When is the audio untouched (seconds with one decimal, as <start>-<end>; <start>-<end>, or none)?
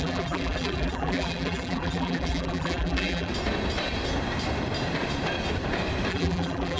3.3-6.1